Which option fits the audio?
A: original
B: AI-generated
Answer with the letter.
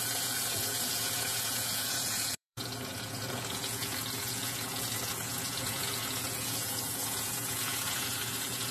B